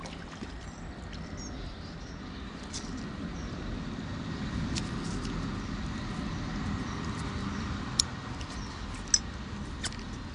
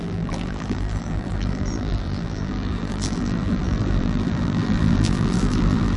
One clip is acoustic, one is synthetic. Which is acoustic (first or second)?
first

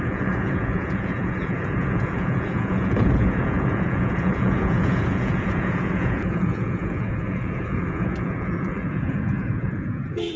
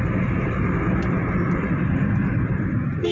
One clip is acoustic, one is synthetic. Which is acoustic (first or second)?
second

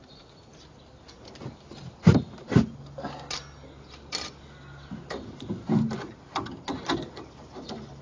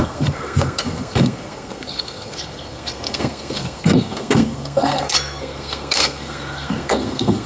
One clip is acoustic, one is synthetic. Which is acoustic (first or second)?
first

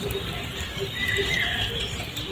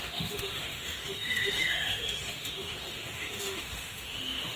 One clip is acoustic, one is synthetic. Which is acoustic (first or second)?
first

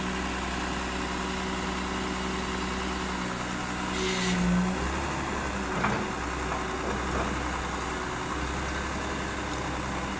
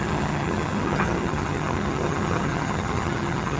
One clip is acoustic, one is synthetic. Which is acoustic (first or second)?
first